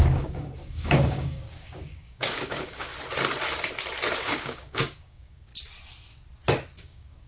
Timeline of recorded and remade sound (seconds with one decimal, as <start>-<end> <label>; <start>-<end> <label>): 0.0-2.9 remade; 2.9-4.2 recorded; 4.2-5.5 remade; 5.5-6.8 recorded; 6.8-7.3 remade